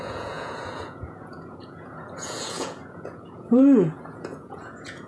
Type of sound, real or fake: fake